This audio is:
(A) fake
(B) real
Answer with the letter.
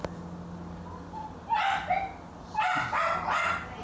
B